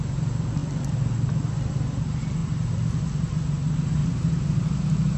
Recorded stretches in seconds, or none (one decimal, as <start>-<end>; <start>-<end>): 0.0-4.0; 4.6-5.2